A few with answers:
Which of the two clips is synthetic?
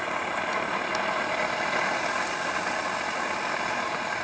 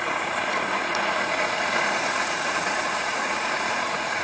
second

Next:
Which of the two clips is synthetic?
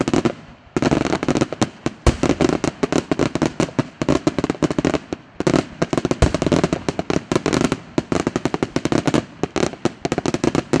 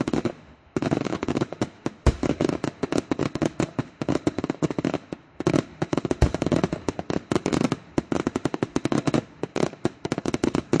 second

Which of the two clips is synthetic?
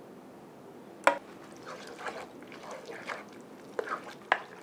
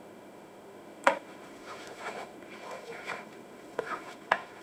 second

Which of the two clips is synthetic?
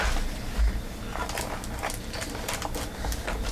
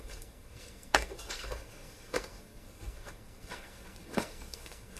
second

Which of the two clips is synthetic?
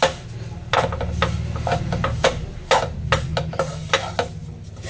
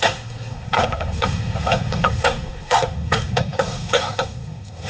second